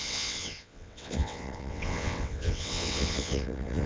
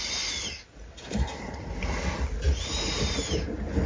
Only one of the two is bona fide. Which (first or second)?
second